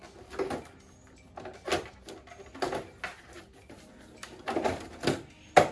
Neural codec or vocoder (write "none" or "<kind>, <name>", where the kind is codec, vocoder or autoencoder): none